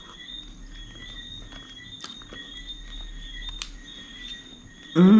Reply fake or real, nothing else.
real